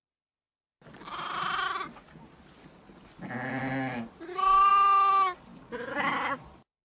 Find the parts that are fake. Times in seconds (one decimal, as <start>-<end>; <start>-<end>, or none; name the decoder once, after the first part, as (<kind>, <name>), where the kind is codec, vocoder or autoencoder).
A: none